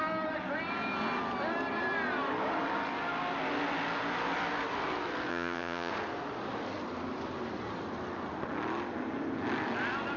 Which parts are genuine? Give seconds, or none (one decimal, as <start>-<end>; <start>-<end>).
0.0-5.3; 5.9-10.2